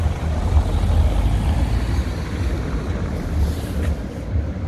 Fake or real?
real